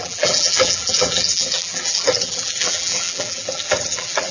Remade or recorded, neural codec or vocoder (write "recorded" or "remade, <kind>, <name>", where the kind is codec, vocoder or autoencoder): remade, vocoder, BigVGAN v2